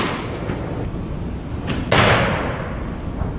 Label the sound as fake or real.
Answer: real